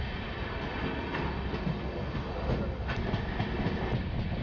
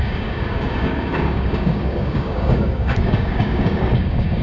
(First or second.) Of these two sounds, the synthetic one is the second